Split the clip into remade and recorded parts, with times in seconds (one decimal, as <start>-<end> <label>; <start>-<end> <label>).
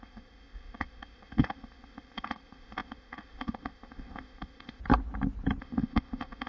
0.0-4.8 remade; 4.8-5.6 recorded; 5.6-6.5 remade